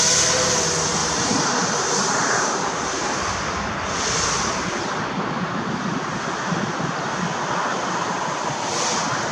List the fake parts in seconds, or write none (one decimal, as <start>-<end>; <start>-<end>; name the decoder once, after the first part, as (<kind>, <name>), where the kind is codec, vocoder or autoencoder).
1.0-3.2 (vocoder, BigVGAN v2); 7.7-8.7